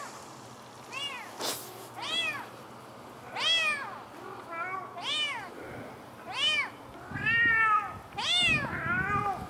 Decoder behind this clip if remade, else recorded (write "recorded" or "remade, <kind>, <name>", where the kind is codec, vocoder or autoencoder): recorded